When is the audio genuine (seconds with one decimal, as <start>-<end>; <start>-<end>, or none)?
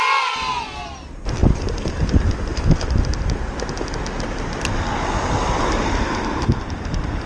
0.0-7.3